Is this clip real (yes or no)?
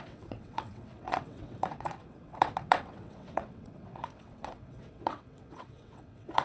no